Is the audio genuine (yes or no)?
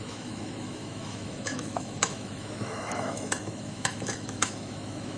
no